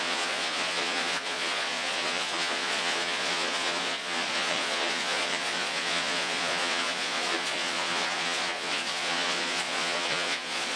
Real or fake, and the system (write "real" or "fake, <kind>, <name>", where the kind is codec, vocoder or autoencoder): fake, vocoder, Vocos